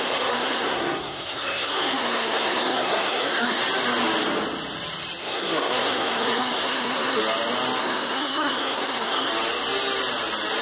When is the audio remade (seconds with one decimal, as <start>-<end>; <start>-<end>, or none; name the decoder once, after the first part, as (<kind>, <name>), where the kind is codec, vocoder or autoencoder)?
0.0-3.6 (codec, SNAC); 5.2-7.2; 7.8-9.3